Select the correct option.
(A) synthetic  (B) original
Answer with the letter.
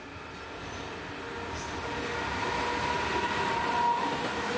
B